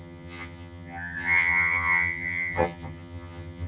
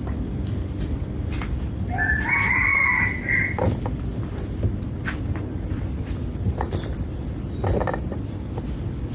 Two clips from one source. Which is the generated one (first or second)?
first